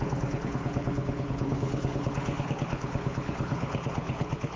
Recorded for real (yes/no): no